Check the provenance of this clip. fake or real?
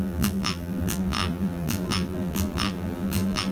fake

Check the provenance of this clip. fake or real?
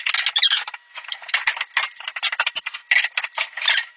real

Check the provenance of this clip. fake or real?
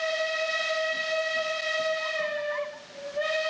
real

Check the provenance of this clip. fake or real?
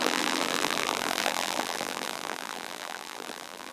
fake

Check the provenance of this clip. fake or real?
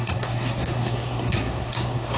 fake